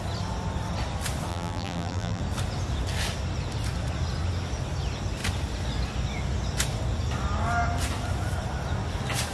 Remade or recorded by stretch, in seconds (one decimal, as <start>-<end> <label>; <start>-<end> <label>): 0.0-1.3 recorded; 1.3-2.2 remade; 2.2-9.3 recorded

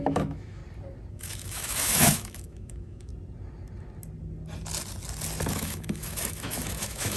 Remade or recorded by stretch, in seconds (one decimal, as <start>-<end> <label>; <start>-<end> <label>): 0.0-0.6 remade; 0.6-1.1 recorded; 1.1-3.1 remade; 3.1-5.5 recorded; 5.5-7.2 remade

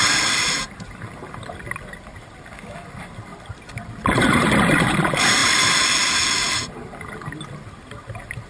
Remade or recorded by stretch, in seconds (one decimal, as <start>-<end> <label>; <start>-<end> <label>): 0.0-8.5 recorded

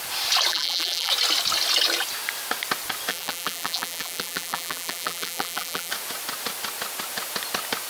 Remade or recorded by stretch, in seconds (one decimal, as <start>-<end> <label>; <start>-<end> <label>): 0.0-0.5 recorded; 0.5-1.1 remade; 1.1-3.1 recorded; 3.1-5.9 remade; 5.9-7.9 recorded

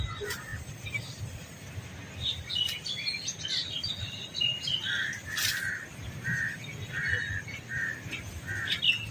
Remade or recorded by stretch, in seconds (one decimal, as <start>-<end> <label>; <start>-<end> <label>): 0.0-9.1 recorded